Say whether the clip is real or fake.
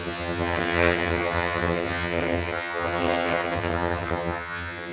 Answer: fake